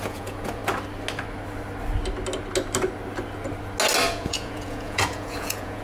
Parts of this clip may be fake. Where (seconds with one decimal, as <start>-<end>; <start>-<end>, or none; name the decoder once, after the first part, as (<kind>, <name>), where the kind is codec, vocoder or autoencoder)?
0.0-0.6 (vocoder, Vocos); 4.1-5.8